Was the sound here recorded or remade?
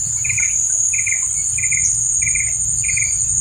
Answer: recorded